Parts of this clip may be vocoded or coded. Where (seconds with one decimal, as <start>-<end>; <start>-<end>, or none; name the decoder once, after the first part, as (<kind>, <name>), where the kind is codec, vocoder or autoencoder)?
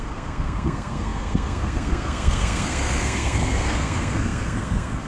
0.0-5.1 (codec, SNAC)